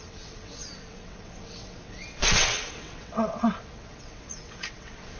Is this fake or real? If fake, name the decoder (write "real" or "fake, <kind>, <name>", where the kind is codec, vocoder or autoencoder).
fake, vocoder, WaveNeXt